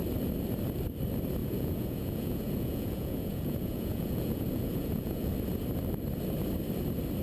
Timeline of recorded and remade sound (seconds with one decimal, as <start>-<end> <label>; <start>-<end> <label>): 0.0-1.4 recorded; 1.4-5.3 remade; 5.3-7.2 recorded